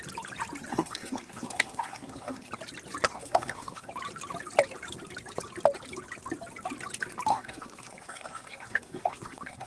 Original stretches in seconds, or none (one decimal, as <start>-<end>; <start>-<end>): 0.0-0.7; 2.5-3.1; 3.9-7.3